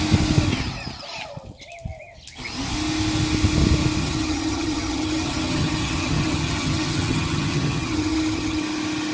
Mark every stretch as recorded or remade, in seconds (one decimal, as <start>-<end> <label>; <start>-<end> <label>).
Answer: 0.0-4.0 recorded; 4.0-8.6 remade; 8.6-9.1 recorded